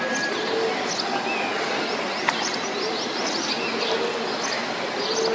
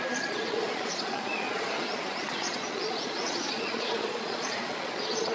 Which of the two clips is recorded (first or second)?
first